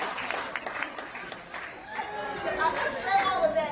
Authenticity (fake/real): fake